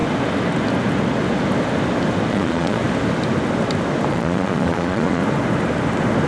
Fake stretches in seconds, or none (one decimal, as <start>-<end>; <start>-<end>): 2.3-2.8; 4.1-5.2